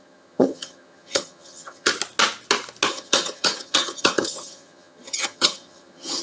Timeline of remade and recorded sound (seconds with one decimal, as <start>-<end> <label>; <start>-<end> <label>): 0.0-1.9 remade; 1.9-2.9 recorded; 2.9-6.2 remade